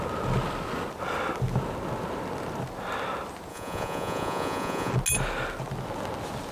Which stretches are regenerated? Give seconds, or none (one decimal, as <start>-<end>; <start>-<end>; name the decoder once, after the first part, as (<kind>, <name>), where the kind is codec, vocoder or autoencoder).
3.5-4.9 (vocoder, Vocos)